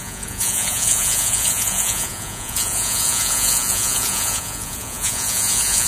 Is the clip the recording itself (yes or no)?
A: no